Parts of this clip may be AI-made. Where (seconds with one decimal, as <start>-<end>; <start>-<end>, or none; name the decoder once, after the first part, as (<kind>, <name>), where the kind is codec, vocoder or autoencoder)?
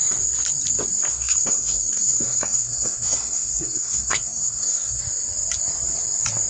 1.1-5.0 (codec, SNAC)